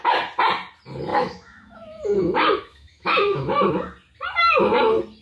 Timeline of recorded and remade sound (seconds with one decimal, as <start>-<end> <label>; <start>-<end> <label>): 0.0-1.1 recorded; 1.1-3.7 remade; 3.7-5.2 recorded